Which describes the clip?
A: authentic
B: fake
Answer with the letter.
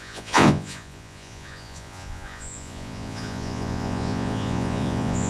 B